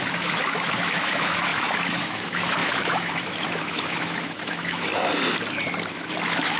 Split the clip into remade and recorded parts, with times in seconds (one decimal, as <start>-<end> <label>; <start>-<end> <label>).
0.0-4.9 remade; 4.9-5.9 recorded; 5.9-6.6 remade